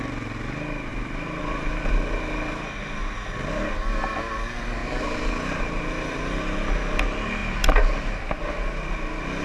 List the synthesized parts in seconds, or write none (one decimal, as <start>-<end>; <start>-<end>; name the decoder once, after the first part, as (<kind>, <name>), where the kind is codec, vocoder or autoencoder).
0.9-1.9 (vocoder, BigVGAN v2); 4.8-5.8